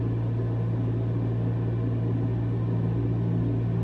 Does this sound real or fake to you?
real